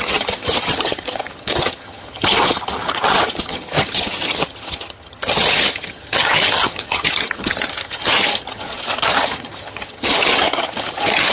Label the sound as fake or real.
fake